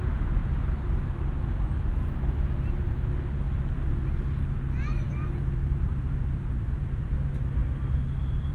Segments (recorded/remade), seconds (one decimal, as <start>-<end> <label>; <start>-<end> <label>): 0.0-0.4 remade; 0.4-5.1 recorded; 5.1-8.5 remade